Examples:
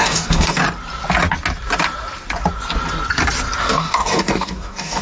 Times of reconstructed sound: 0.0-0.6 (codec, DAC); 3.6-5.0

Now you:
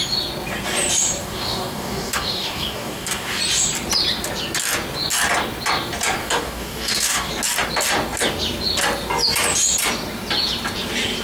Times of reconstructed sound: 1.2-3.4 (codec, DAC); 6.2-7.3

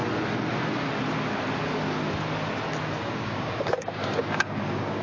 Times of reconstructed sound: 3.0-5.0 (codec, DAC)

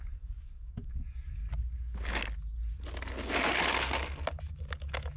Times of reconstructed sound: 0.0-1.4 (codec, DAC); 4.5-5.2